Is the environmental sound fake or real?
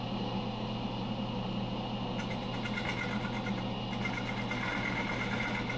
real